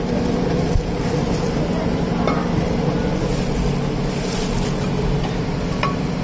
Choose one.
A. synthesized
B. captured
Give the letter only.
B